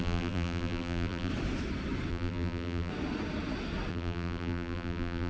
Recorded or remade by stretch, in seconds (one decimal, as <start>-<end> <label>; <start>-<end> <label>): 0.0-1.3 remade; 1.3-2.1 recorded; 2.1-2.9 remade; 2.9-3.9 recorded; 3.9-5.3 remade